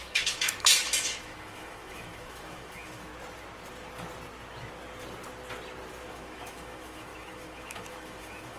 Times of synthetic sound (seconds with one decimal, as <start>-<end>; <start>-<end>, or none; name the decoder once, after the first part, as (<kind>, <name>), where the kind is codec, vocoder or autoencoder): 0.0-3.1 (autoencoder, DAC-VAE); 6.1-8.6